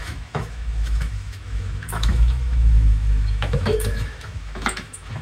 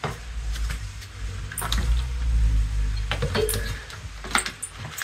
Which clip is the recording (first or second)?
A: second